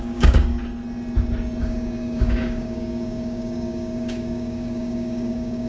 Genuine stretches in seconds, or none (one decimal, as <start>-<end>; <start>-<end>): 0.5-1.6